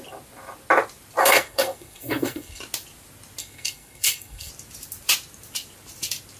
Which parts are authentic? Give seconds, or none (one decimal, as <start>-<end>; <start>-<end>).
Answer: 0.0-1.2; 2.6-3.4; 4.5-6.4